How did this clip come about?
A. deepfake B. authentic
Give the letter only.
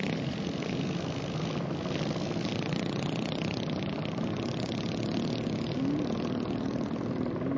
B